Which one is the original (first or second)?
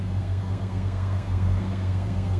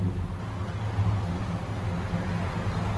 second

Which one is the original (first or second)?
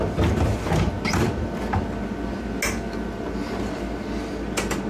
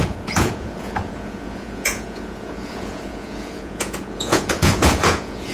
first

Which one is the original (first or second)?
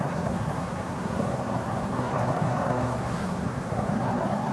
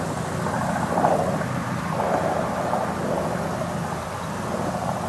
second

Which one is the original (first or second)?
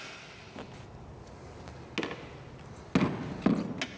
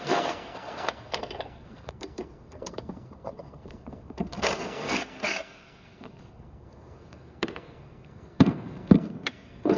first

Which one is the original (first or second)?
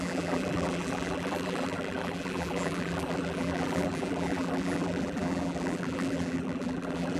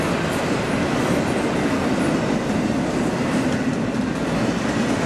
second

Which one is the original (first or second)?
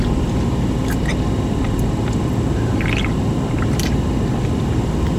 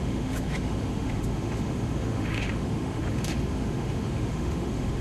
first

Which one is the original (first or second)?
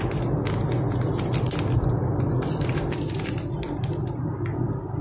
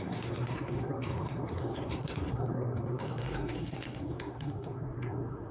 first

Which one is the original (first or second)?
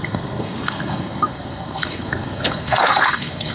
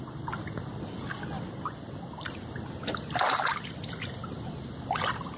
second